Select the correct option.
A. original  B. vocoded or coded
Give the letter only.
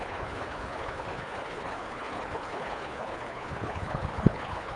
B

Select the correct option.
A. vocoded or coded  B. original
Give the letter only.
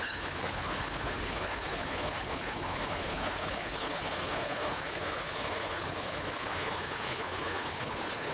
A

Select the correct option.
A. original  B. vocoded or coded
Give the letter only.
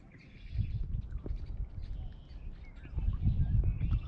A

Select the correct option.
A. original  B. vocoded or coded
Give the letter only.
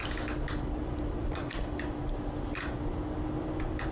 A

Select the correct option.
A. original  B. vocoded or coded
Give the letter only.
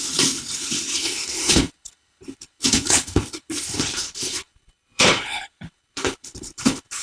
B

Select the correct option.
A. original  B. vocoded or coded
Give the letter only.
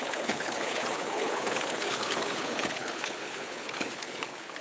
B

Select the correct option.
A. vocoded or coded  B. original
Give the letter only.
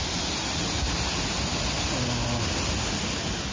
B